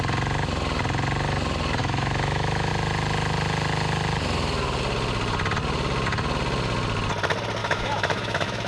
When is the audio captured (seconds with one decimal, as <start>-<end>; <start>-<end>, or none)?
0.0-1.8; 2.7-7.6

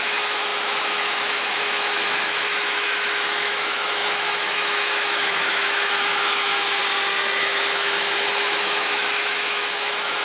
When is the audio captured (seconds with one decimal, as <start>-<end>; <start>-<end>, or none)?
6.8-7.4

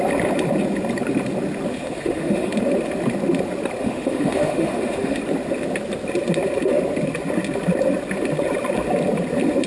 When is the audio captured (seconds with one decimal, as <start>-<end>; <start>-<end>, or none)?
0.0-1.7; 2.5-3.8; 5.2-9.7

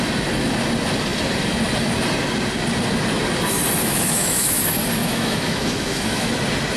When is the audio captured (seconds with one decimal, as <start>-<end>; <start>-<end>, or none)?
0.0-3.8; 4.6-5.0; 6.3-6.8

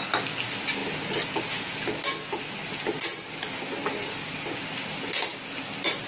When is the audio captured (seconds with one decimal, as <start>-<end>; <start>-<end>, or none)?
0.0-6.1

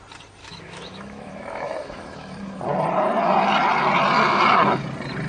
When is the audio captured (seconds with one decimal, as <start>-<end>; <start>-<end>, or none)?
0.0-0.4; 2.6-5.3

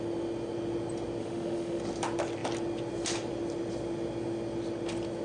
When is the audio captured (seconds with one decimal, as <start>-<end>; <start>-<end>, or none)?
0.0-1.2; 1.8-5.2